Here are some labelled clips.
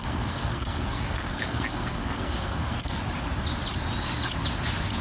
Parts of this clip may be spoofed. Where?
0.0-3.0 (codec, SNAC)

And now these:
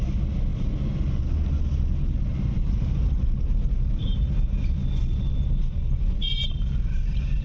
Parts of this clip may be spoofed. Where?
none

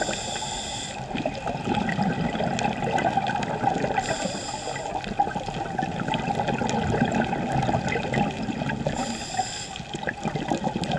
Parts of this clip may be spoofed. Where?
none

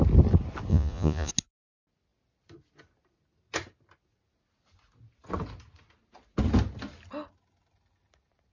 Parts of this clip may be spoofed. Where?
0.7-1.3 (vocoder, Vocos)

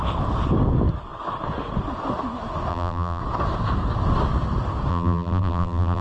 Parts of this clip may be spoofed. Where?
2.7-3.2 (vocoder, BigVGAN v2); 4.9-6.0

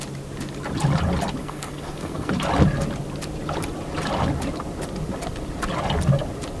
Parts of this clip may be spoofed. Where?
1.4-2.3 (codec, SNAC)

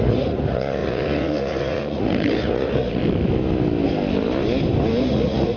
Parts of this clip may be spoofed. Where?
0.0-3.0 (vocoder, Vocos); 5.0-5.6